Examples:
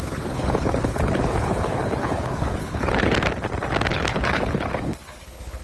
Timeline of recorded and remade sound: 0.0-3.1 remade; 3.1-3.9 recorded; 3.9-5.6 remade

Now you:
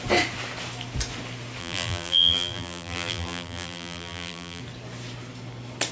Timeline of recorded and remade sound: 0.0-1.6 recorded; 1.6-4.6 remade; 4.6-5.9 recorded

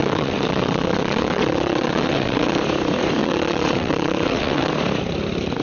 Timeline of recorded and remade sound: 0.0-2.6 remade; 2.6-3.2 recorded; 3.2-4.7 remade; 4.7-5.6 recorded